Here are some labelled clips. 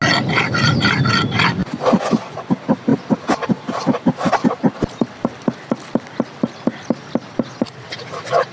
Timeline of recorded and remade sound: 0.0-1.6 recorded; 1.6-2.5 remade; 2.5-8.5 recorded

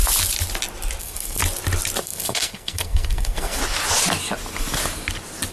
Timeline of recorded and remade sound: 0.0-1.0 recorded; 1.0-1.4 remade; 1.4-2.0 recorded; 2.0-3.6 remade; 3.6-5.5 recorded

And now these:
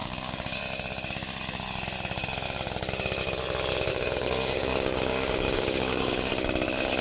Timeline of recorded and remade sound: 0.0-0.6 remade; 0.6-3.9 recorded; 3.9-6.3 remade; 6.3-7.0 recorded